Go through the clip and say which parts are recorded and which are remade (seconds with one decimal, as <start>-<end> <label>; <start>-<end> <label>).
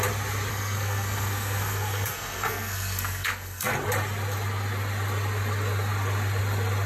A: 0.0-0.5 recorded; 0.5-3.7 remade; 3.7-6.9 recorded